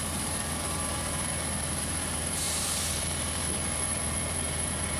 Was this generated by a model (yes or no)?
yes